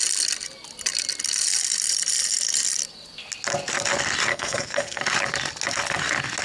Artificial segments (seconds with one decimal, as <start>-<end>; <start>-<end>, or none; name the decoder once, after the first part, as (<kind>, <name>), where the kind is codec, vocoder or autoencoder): 4.3-5.0 (codec, SNAC)